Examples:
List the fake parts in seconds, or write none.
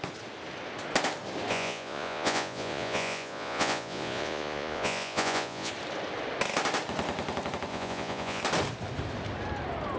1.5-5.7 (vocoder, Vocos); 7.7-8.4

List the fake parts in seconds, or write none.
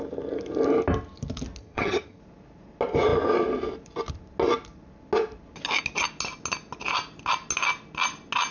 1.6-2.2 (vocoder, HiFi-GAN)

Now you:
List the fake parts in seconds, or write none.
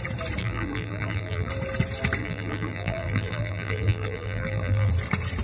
0.4-1.5 (vocoder, BigVGAN v2); 2.2-4.9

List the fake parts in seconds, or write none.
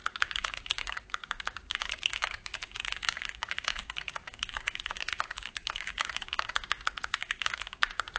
0.0-8.2 (codec, DAC)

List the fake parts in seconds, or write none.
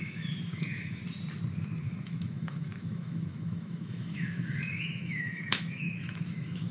0.0-1.0 (autoencoder, DAC-VAE); 1.8-6.7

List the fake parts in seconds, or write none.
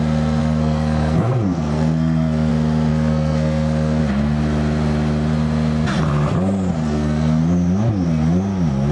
0.4-2.5 (codec, SNAC); 2.9-4.0; 6.8-7.4